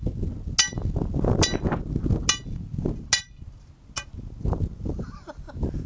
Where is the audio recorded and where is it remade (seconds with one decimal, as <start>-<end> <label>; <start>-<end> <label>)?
0.0-5.9 recorded